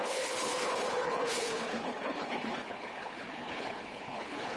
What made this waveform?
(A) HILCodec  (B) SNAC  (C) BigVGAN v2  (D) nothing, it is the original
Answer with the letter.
A